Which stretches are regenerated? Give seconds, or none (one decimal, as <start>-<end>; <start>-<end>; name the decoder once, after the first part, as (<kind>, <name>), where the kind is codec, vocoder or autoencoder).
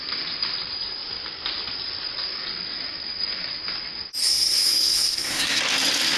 4.2-5.6 (codec, SNAC)